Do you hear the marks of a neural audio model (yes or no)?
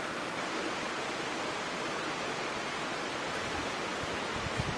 no